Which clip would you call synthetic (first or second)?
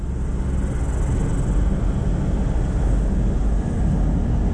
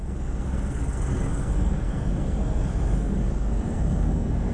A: second